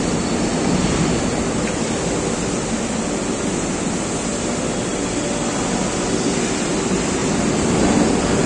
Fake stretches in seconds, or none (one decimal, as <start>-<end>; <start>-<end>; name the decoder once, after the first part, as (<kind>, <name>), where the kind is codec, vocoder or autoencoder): none